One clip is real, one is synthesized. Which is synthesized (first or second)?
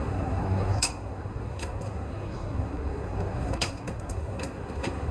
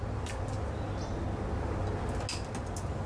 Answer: first